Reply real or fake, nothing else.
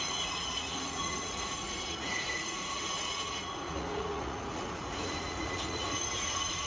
fake